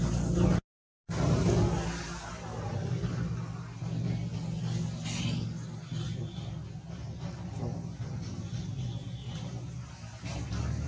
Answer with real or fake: real